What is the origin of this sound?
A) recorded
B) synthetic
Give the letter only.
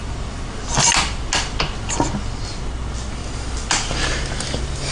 A